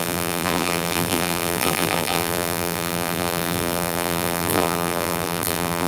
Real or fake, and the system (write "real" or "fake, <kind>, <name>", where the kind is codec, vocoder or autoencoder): fake, vocoder, BigVGAN v2